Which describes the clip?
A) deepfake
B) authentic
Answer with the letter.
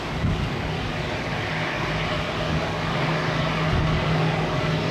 A